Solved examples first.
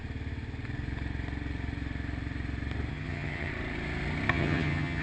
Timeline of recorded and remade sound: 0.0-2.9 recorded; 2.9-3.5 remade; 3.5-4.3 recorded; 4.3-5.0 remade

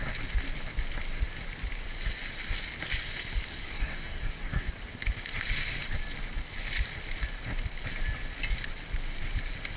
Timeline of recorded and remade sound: 0.0-3.5 recorded; 3.5-4.7 remade; 4.7-9.8 recorded